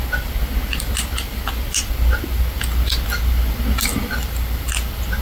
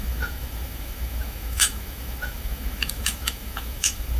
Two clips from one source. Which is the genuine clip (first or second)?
first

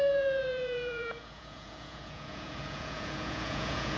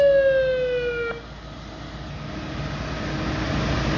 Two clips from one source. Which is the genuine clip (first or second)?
second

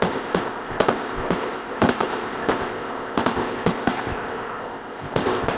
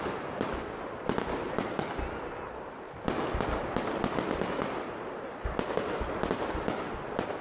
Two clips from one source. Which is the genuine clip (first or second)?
second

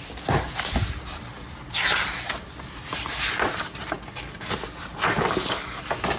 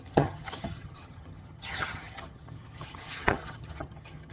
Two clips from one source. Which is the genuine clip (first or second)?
first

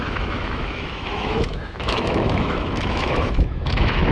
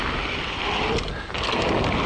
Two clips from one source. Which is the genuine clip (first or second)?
second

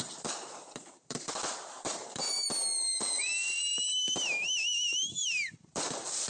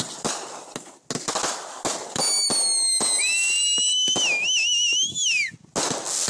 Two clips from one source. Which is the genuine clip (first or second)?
second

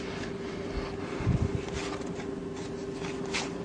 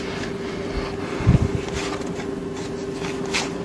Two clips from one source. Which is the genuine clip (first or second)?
second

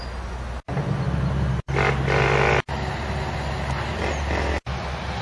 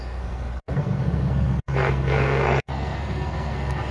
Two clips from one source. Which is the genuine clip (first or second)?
first